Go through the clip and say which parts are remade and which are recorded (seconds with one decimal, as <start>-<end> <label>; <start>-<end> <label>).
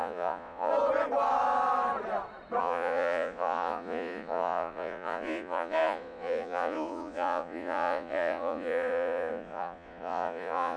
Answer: 0.0-0.7 remade; 0.7-2.6 recorded; 2.6-10.8 remade